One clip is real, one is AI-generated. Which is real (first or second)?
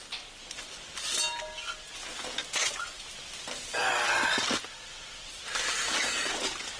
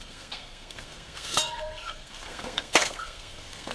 first